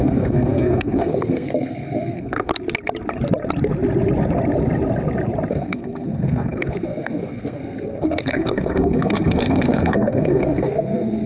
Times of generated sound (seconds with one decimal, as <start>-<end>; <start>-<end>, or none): 0.0-2.5; 5.5-11.3